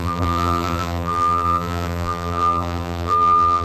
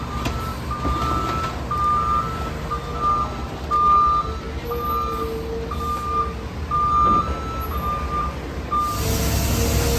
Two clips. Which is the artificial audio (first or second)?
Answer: first